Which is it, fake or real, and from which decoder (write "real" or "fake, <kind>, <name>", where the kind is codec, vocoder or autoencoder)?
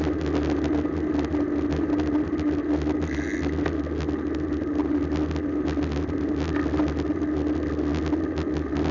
real